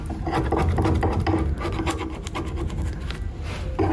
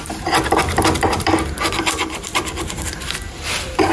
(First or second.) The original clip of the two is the first